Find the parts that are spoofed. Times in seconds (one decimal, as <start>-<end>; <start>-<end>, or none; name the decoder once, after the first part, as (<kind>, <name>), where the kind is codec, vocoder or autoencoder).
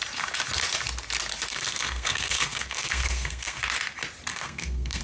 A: 1.5-3.6 (codec, SNAC); 4.3-5.0